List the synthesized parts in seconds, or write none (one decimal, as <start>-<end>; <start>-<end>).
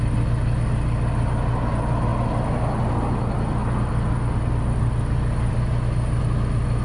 none